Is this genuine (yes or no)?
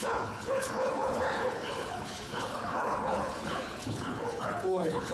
no